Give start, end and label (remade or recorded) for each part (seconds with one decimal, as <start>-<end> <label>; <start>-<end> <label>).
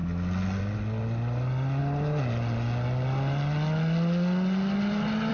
0.0-5.3 recorded